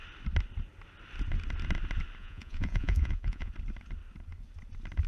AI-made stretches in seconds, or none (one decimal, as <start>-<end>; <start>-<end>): 2.2-3.5